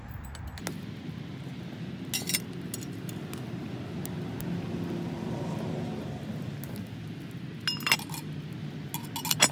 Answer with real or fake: real